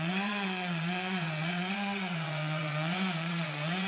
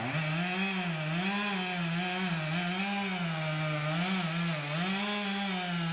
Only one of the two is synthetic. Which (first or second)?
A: first